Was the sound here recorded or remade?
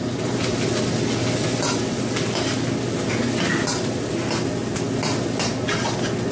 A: recorded